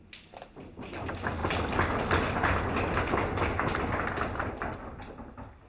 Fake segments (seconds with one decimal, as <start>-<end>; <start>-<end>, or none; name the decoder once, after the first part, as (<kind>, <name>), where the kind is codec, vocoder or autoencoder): none